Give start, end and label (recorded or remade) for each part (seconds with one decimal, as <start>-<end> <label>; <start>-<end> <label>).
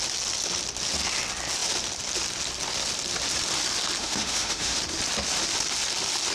0.0-4.0 recorded; 4.0-4.8 remade; 4.8-6.3 recorded